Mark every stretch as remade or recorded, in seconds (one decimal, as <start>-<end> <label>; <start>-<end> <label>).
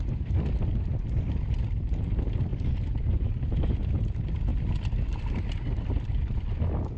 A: 0.0-7.0 recorded